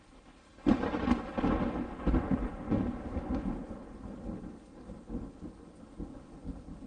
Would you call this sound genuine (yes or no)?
yes